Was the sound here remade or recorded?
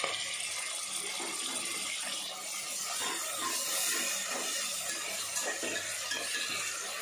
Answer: recorded